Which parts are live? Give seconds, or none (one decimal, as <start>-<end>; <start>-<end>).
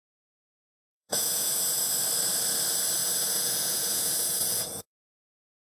1.8-3.0; 5.1-5.8